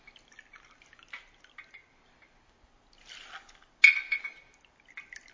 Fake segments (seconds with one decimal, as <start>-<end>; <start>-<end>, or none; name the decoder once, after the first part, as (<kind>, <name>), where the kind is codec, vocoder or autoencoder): none